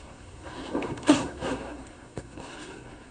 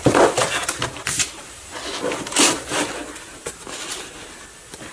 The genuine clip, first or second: second